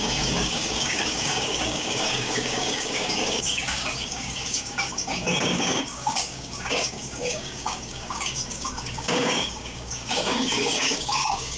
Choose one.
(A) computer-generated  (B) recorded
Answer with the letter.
A